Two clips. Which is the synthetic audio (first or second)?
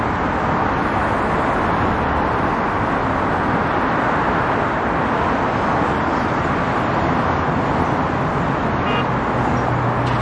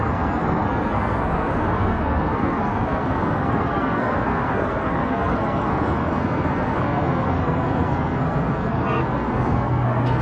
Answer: second